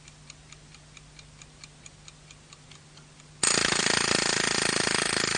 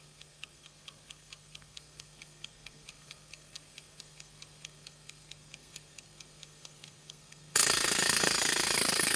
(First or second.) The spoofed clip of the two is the second